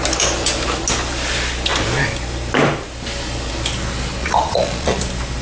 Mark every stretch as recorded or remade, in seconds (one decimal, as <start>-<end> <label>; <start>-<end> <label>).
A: 0.0-4.2 recorded; 4.2-5.0 remade; 5.0-5.4 recorded